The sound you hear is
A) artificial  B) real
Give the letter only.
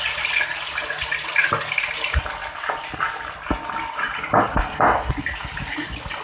B